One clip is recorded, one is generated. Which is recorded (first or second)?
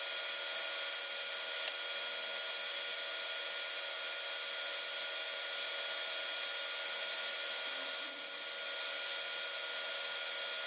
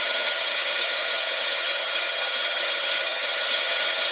first